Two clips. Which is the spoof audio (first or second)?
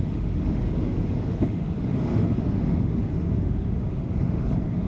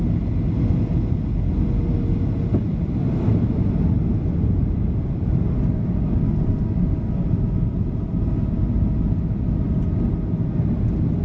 first